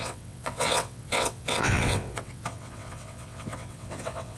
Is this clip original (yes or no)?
no